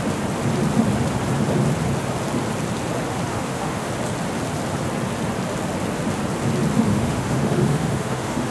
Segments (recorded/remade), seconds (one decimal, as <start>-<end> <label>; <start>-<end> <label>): 0.0-3.3 recorded; 3.3-3.9 remade; 3.9-6.9 recorded; 6.9-8.5 remade